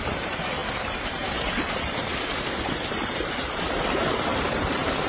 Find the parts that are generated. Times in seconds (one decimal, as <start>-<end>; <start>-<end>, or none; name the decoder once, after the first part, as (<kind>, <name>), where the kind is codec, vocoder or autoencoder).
0.0-5.1 (vocoder, BigVGAN v2)